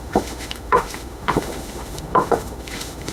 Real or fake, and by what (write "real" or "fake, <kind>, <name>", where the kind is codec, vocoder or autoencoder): fake, autoencoder, DAC-VAE